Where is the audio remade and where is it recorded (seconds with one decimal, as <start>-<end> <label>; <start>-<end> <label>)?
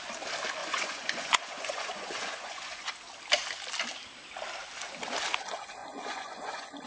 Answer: 0.0-0.6 recorded; 0.6-2.9 remade; 2.9-5.8 recorded; 5.8-6.9 remade